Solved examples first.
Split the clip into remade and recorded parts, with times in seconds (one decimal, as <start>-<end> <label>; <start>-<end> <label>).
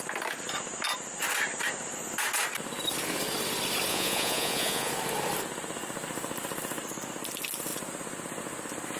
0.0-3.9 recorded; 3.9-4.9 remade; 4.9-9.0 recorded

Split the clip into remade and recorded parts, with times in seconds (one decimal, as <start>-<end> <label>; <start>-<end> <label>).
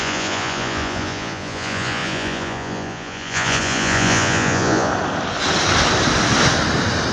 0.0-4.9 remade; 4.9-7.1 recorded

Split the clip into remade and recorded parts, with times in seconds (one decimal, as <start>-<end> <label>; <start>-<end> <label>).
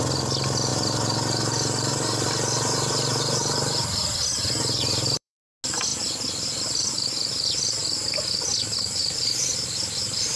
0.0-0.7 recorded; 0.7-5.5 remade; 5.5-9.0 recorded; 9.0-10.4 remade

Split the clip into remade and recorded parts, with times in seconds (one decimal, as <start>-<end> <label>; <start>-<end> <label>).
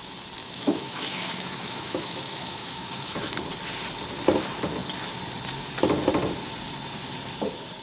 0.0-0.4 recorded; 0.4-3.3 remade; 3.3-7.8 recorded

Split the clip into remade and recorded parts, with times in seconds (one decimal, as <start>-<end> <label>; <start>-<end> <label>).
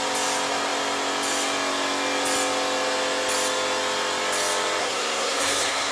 0.0-4.8 recorded; 4.8-5.9 remade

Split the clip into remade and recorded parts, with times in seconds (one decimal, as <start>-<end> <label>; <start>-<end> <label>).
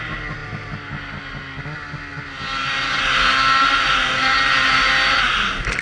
0.0-5.8 recorded